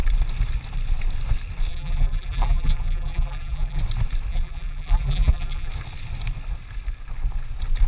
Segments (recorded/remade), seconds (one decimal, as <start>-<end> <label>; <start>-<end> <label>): 0.0-1.7 recorded; 1.7-3.8 remade; 3.8-4.3 recorded; 4.3-5.7 remade; 5.7-7.9 recorded